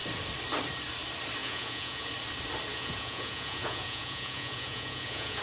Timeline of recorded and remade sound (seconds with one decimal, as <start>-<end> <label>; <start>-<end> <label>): 0.0-1.4 recorded; 1.4-2.1 remade; 2.1-2.7 recorded; 2.7-5.4 remade